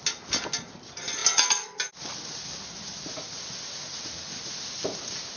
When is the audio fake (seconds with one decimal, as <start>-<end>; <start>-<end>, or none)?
none